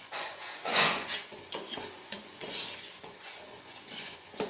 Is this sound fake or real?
fake